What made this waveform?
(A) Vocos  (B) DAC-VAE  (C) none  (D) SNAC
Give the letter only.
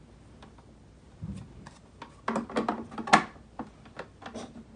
C